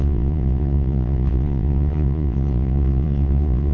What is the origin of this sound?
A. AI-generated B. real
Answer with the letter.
A